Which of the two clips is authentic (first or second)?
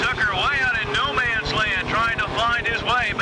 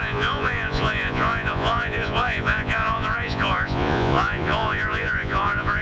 first